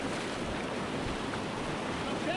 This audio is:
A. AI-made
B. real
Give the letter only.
B